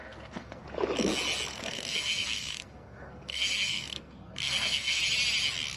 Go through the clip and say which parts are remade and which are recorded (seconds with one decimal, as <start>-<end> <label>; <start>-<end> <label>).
0.0-0.6 remade; 0.6-1.5 recorded; 1.5-5.0 remade; 5.0-5.8 recorded